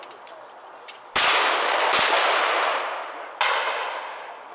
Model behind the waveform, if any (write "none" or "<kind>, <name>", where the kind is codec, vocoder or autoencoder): none